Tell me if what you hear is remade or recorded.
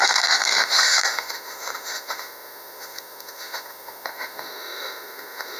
remade